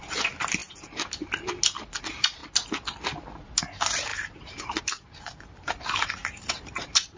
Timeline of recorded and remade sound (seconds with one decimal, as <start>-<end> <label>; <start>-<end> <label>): 0.0-0.6 remade; 0.6-2.0 recorded; 2.0-2.4 remade; 2.4-3.6 recorded; 3.6-7.2 remade